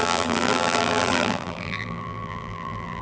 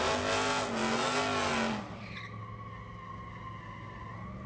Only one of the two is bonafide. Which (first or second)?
second